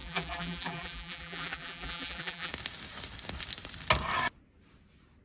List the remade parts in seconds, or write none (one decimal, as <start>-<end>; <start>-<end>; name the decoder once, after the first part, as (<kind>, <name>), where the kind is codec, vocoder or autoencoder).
0.0-2.5 (vocoder, BigVGAN v2)